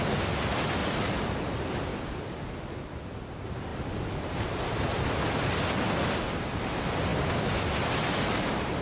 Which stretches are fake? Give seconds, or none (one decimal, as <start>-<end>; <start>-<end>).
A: none